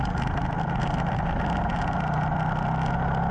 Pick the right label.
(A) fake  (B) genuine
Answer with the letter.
B